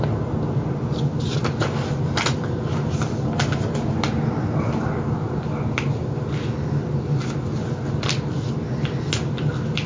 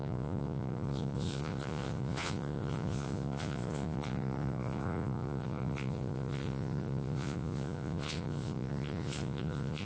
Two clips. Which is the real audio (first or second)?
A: first